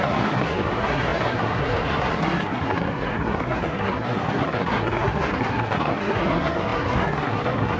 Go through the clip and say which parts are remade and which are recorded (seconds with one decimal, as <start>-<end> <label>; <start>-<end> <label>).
0.0-7.8 remade